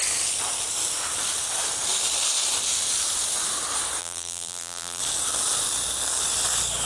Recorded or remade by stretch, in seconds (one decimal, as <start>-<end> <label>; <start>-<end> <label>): 0.0-4.0 recorded; 4.0-5.0 remade; 5.0-6.9 recorded